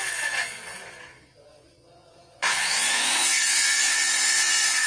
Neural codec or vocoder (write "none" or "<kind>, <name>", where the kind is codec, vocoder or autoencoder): vocoder, Vocos